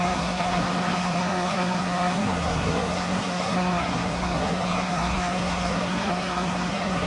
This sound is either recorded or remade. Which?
remade